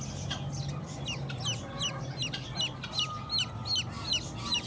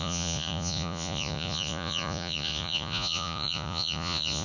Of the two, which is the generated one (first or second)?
second